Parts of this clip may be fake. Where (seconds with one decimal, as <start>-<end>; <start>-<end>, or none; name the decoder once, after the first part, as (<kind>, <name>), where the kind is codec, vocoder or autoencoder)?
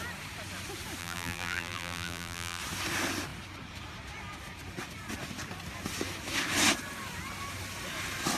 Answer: 1.0-2.6 (vocoder, BigVGAN v2)